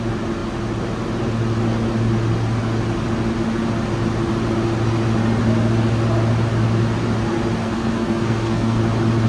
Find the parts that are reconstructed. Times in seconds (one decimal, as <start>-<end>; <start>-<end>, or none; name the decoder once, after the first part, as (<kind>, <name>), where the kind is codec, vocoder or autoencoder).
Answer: 7.6-8.8 (codec, SNAC)